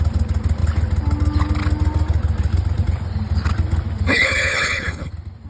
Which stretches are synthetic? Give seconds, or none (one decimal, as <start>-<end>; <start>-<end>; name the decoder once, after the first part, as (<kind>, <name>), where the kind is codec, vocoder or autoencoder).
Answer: 4.1-5.1 (codec, HILCodec)